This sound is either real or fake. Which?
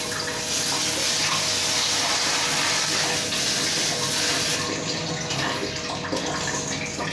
real